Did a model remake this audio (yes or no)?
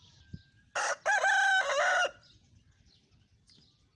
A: no